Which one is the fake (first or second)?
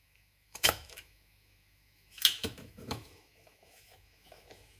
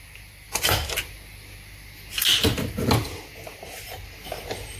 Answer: first